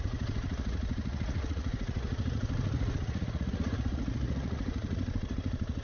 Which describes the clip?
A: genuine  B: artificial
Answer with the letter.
B